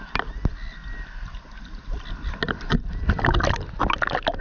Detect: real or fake real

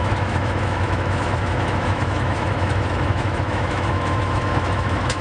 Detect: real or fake fake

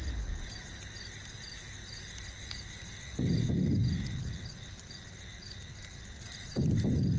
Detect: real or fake real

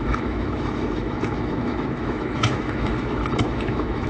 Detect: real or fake fake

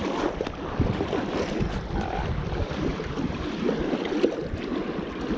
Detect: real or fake real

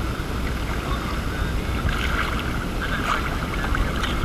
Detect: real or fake real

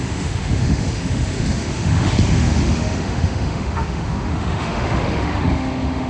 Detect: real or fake fake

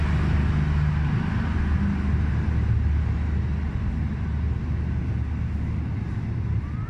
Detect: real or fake real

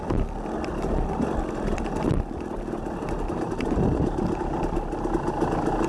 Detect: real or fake real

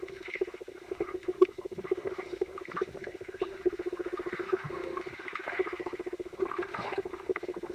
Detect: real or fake fake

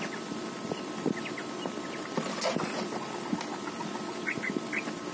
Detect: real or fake real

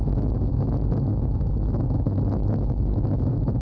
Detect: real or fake fake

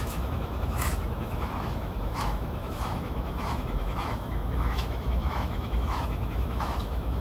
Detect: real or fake fake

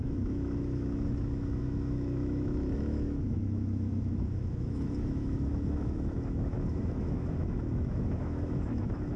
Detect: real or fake fake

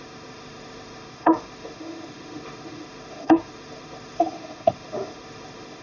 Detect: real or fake fake